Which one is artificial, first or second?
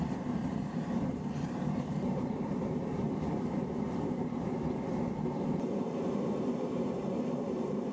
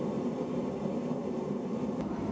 first